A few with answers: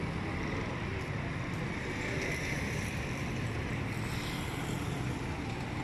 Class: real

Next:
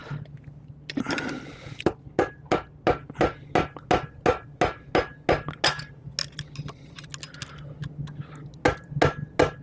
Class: real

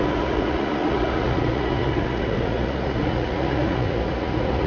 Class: fake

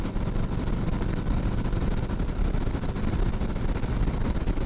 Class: real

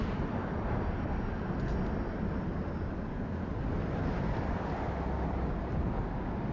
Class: real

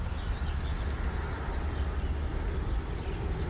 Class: real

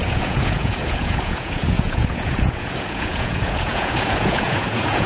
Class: fake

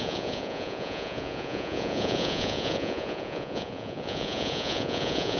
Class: fake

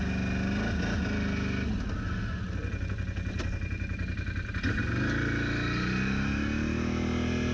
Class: real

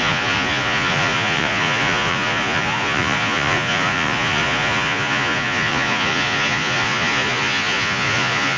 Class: fake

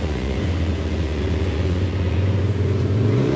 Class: fake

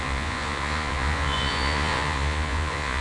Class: fake